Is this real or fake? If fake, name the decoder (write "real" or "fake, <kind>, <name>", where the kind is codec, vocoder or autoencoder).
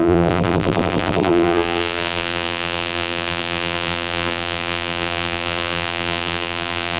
fake, vocoder, BigVGAN v2